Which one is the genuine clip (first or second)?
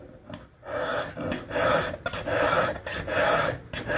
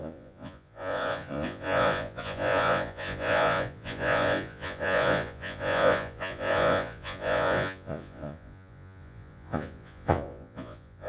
first